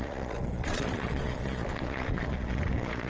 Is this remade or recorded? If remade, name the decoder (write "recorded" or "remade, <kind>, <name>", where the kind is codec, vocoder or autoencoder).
remade, vocoder, Vocos